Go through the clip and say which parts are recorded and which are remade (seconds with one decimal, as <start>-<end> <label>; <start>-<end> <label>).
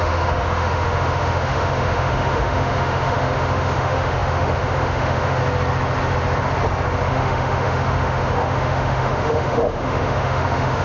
0.0-5.4 remade; 5.4-7.1 recorded; 7.1-10.8 remade